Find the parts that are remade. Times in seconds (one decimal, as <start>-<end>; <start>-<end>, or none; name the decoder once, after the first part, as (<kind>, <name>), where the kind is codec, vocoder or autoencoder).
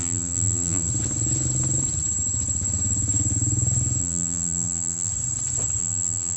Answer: 0.0-0.9 (vocoder, BigVGAN v2); 4.0-5.1; 5.8-6.4